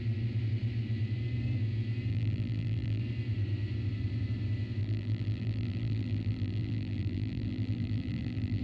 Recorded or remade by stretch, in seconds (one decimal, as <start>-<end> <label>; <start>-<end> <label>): 0.0-2.1 recorded; 2.1-3.0 remade; 3.0-4.8 recorded; 4.8-8.6 remade